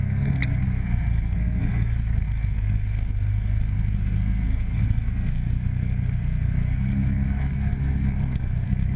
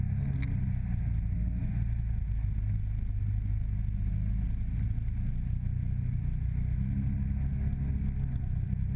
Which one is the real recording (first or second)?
second